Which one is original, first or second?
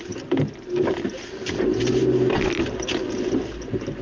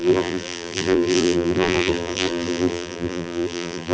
first